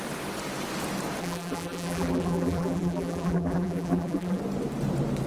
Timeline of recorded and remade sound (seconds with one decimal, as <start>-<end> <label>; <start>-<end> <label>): 0.0-1.2 recorded; 1.2-4.4 remade; 4.4-5.3 recorded